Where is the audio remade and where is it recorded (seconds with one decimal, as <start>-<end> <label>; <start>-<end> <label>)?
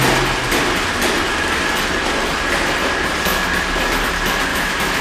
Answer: 0.0-4.5 recorded; 4.5-5.0 remade